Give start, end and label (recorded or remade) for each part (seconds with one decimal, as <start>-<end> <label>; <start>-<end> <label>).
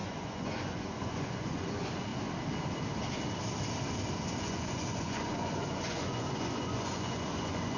0.0-2.1 remade; 2.1-4.4 recorded; 4.4-7.8 remade